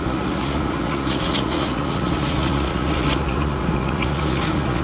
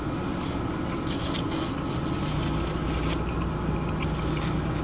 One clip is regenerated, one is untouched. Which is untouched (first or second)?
second